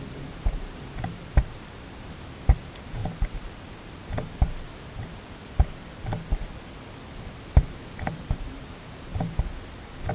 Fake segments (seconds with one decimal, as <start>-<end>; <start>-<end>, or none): 0.0-3.0; 7.9-9.1